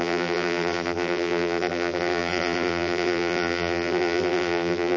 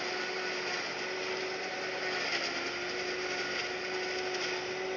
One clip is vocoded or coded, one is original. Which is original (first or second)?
second